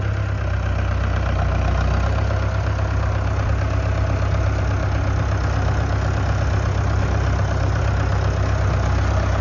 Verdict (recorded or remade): recorded